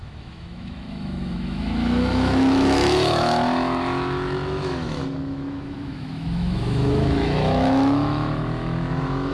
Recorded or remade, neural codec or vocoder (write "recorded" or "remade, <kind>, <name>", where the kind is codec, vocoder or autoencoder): remade, autoencoder, DAC-VAE